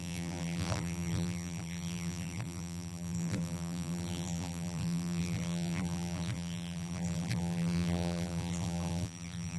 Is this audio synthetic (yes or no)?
yes